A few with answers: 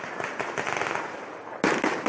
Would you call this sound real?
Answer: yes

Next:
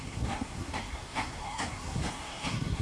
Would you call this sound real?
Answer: no